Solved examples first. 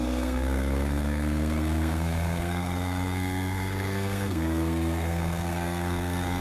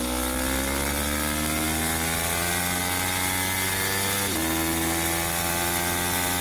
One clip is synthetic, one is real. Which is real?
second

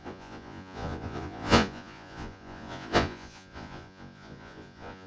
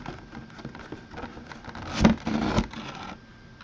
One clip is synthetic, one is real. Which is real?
second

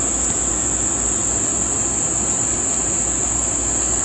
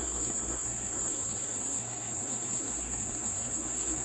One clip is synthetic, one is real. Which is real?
first